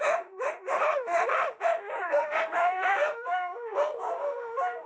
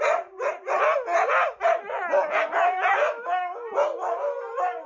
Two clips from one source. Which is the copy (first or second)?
first